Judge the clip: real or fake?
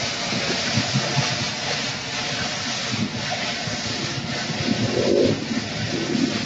real